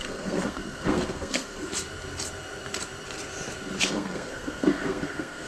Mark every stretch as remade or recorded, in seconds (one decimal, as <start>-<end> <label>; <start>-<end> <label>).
0.0-1.7 remade; 1.7-3.8 recorded; 3.8-5.5 remade